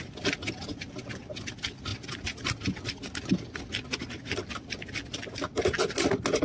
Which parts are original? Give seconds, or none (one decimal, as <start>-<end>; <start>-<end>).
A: 0.0-6.4